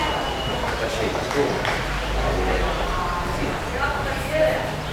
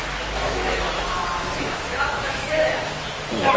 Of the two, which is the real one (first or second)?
first